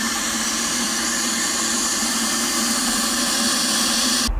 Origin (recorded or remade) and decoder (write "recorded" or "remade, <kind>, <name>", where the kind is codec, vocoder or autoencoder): remade, vocoder, BigVGAN v2